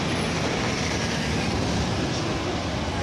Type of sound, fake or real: real